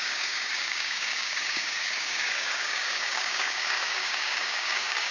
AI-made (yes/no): yes